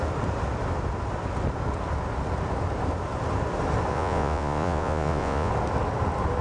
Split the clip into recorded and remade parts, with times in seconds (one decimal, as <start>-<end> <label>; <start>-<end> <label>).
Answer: 0.0-3.9 recorded; 3.9-5.5 remade; 5.5-6.4 recorded